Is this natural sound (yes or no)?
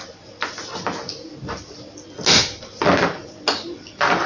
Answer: yes